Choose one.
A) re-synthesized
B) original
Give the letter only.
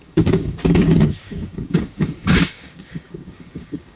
A